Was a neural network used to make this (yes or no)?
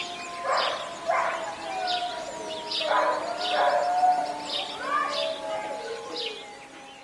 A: no